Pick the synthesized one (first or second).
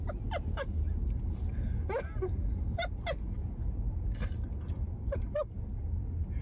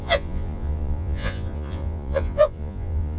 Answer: second